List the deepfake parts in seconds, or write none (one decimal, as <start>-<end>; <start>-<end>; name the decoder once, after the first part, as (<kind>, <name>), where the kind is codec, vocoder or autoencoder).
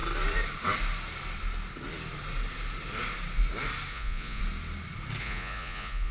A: 3.9-4.4 (vocoder, Vocos); 5.2-6.1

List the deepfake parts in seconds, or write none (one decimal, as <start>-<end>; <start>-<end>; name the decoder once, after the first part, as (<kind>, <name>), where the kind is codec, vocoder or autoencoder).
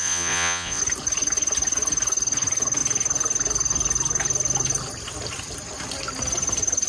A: 0.0-0.8 (vocoder, Vocos)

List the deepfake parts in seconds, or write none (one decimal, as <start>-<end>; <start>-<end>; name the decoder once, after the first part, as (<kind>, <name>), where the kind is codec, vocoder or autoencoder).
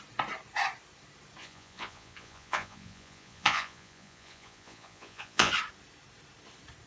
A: 1.4-5.5 (vocoder, Vocos)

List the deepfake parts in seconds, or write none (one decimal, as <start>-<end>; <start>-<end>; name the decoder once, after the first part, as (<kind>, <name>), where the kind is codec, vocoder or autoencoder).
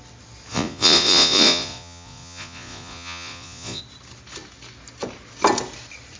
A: 0.5-3.8 (vocoder, Vocos)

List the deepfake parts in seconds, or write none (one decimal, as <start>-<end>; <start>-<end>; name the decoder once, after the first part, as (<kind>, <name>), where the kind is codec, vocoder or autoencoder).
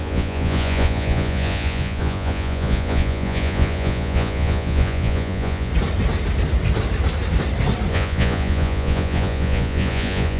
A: 0.0-5.7 (vocoder, Vocos); 7.9-10.4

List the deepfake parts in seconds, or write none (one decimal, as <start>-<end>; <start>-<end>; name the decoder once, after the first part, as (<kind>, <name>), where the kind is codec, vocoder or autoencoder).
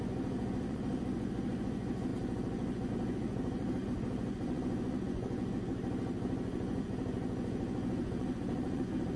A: 0.0-9.2 (vocoder, Vocos)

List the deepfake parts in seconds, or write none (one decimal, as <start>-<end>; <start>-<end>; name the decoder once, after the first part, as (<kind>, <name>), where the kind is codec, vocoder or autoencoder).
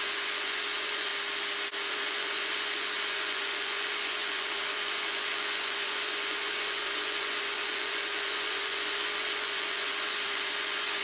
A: 0.0-1.1 (vocoder, Vocos); 1.9-11.0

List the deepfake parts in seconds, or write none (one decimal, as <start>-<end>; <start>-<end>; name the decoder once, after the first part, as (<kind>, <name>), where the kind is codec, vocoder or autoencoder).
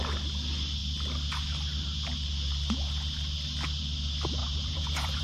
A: 4.4-5.2 (vocoder, Vocos)